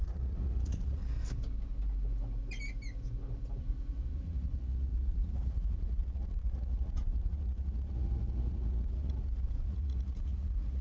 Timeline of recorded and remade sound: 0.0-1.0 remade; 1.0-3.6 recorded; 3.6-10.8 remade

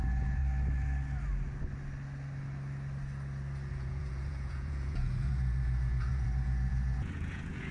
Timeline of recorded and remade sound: 0.0-0.4 remade; 0.4-3.7 recorded; 3.7-7.7 remade

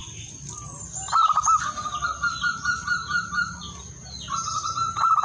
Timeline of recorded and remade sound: 0.0-5.2 recorded

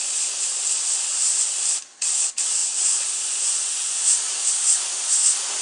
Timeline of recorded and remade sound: 0.0-2.6 recorded; 2.6-4.2 remade; 4.2-5.6 recorded

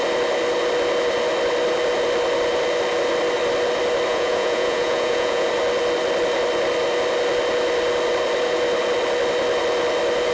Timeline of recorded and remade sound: 0.0-4.1 recorded; 4.1-5.5 remade; 5.5-10.3 recorded

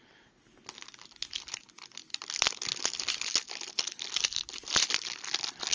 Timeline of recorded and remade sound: 0.0-5.7 recorded

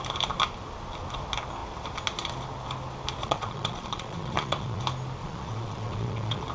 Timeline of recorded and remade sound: 0.0-3.2 recorded; 3.2-4.8 remade; 4.8-5.2 recorded; 5.2-6.5 remade